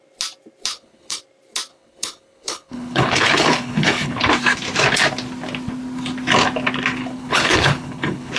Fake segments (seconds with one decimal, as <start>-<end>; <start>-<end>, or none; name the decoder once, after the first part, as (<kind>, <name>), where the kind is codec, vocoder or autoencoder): 0.7-1.2 (codec, HILCodec); 1.7-4.2; 7.0-8.4